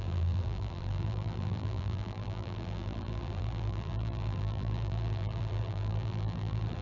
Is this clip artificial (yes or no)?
yes